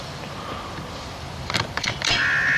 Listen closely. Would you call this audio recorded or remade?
remade